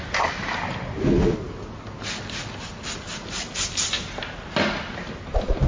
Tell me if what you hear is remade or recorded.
recorded